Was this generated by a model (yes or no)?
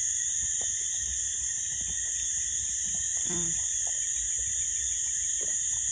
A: yes